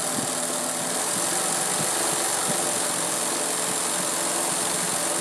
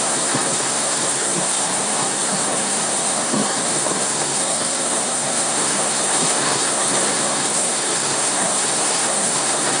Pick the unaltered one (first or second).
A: first